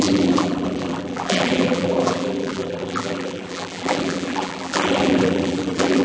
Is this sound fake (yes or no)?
yes